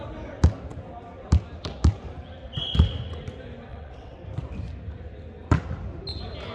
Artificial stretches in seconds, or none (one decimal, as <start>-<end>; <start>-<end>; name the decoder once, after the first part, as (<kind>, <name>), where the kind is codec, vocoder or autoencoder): 3.7-4.2 (vocoder, WaveNeXt)

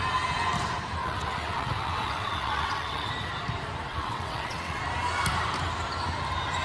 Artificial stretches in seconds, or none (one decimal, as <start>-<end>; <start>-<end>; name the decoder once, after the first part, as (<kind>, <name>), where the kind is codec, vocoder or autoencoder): 1.0-3.1 (vocoder, WaveNeXt); 3.9-4.8

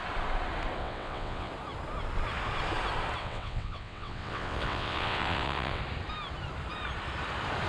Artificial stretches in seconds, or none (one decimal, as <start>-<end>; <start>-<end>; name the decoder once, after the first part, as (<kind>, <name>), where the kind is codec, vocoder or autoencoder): 0.8-1.5 (vocoder, WaveNeXt); 3.2-5.8

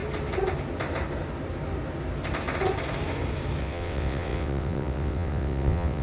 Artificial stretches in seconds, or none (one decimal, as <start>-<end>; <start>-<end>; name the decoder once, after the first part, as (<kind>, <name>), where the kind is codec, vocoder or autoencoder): 3.6-6.0 (vocoder, WaveNeXt)

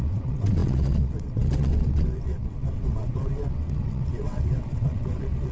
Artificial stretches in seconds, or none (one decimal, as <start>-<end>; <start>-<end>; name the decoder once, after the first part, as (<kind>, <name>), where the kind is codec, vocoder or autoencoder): 0.0-5.5 (vocoder, WaveNeXt)

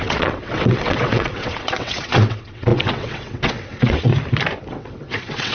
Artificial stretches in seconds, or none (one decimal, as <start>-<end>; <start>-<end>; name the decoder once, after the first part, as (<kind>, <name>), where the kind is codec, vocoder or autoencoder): 0.0-4.1 (vocoder, WaveNeXt); 4.7-5.5

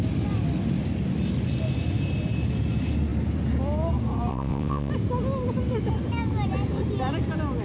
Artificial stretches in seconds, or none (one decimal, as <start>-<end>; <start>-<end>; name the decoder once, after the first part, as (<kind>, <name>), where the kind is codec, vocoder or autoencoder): 4.3-4.9 (vocoder, WaveNeXt)